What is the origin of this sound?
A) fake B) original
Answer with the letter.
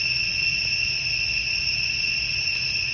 B